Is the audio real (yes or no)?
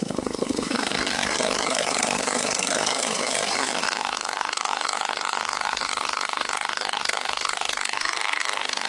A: no